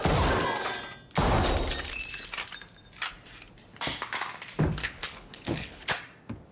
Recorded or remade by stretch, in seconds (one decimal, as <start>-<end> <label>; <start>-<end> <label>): 0.0-4.8 recorded; 4.8-5.9 remade; 5.9-6.5 recorded